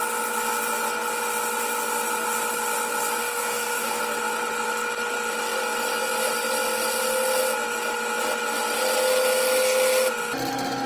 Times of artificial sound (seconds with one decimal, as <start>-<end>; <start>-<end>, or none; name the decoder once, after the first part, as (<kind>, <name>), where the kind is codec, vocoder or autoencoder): 3.2-4.0 (codec, DAC)